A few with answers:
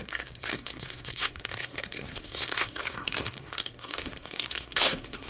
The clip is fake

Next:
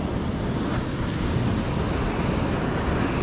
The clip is real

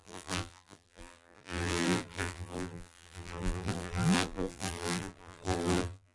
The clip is fake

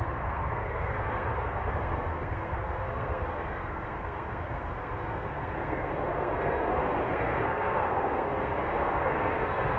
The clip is fake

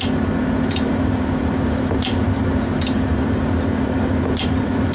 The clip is fake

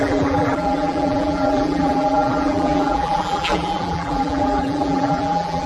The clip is fake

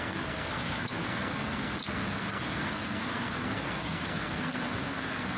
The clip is fake